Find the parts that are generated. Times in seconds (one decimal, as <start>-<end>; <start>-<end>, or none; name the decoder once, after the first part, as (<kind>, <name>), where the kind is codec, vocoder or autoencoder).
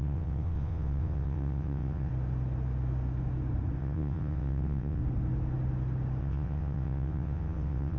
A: 0.0-2.1 (vocoder, WaveNeXt); 3.8-5.0; 6.2-8.0